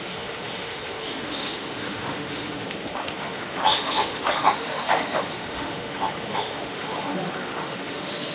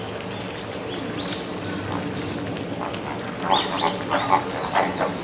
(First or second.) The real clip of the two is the second